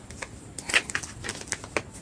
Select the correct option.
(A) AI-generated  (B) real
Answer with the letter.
B